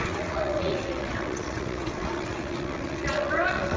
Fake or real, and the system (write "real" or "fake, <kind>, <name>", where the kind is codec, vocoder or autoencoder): fake, vocoder, WaveNeXt